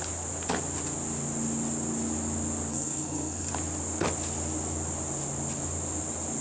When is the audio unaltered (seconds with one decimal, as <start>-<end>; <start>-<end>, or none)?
0.0-2.7; 3.5-6.4